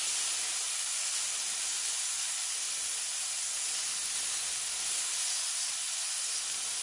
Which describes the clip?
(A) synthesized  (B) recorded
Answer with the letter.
B